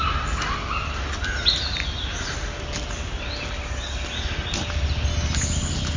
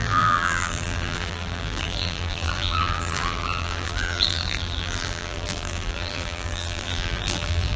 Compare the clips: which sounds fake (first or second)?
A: second